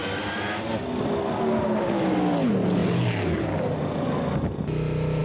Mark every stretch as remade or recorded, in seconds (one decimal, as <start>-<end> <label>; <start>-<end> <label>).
0.0-0.7 remade; 0.7-5.2 recorded